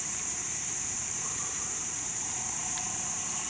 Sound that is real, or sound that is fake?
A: fake